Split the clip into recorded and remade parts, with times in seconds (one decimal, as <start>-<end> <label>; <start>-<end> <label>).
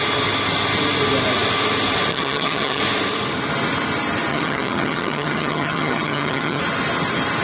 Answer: 0.0-2.1 recorded; 2.1-2.8 remade; 2.8-4.3 recorded; 4.3-6.6 remade; 6.6-7.4 recorded